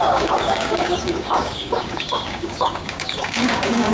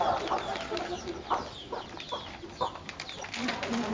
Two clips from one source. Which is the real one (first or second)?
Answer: second